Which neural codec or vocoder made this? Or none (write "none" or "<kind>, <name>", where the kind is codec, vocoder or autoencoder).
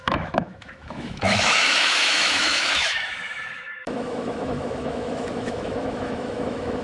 autoencoder, DAC-VAE